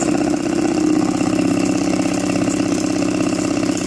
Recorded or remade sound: recorded